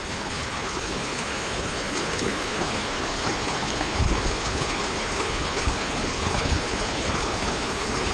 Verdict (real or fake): fake